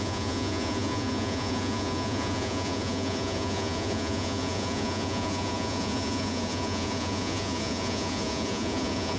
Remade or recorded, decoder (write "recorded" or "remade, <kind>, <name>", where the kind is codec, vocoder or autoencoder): remade, vocoder, Vocos